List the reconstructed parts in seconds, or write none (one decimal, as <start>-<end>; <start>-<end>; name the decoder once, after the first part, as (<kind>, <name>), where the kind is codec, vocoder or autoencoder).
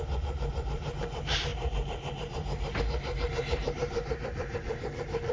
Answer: 0.0-5.3 (vocoder, BigVGAN v2)